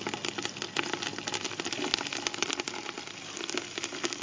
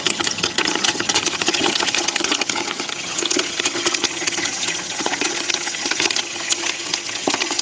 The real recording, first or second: first